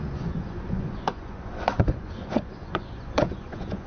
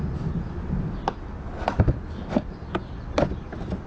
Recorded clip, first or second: second